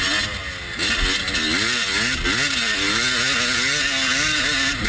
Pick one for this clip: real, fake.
real